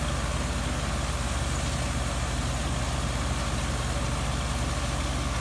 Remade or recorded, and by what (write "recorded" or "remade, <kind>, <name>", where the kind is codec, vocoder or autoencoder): recorded